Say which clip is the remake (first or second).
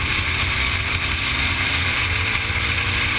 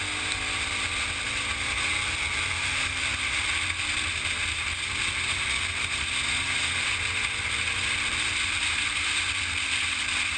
first